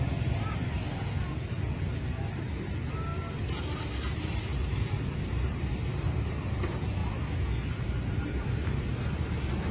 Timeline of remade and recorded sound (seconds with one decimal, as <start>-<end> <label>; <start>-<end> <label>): 0.0-0.6 remade; 0.6-2.3 recorded; 2.3-3.1 remade; 3.1-3.6 recorded; 3.6-7.0 remade; 7.0-7.8 recorded; 7.8-9.7 remade